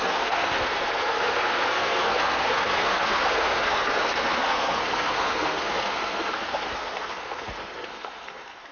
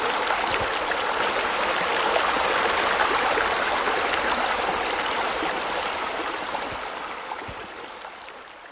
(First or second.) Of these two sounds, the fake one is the first